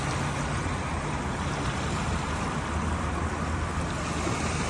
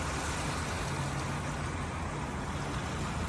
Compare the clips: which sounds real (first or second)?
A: second